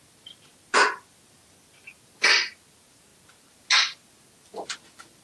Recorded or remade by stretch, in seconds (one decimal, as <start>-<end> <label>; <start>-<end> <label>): 0.0-5.2 recorded